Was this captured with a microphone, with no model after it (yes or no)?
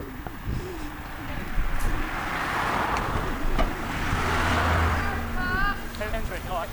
yes